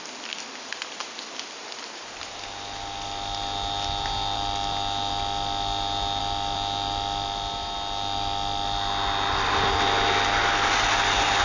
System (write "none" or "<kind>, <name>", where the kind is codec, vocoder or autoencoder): none